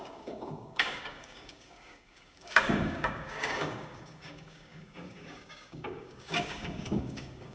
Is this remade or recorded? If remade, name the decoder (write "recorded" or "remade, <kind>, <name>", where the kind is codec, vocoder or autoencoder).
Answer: remade, codec, DAC